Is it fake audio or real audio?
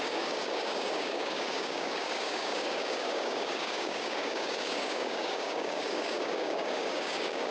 fake